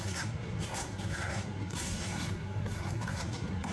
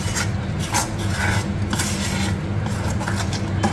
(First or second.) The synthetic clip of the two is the first